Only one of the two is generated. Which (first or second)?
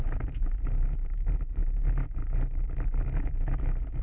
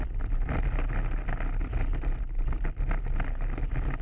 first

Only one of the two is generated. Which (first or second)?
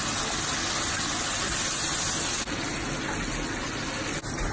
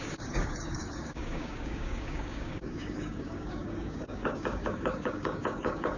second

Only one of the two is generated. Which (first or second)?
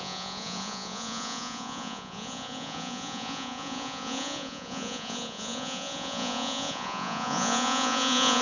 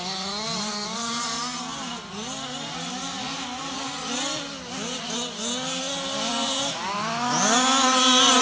first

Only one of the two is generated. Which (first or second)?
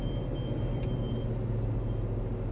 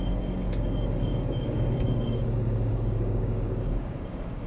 second